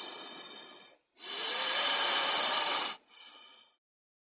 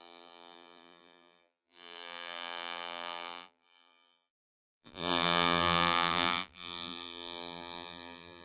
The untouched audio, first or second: first